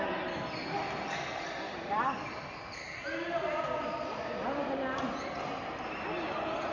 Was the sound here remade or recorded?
recorded